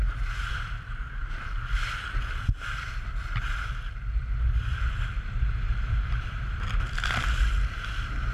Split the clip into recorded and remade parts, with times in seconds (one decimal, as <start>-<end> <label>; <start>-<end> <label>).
0.0-8.3 recorded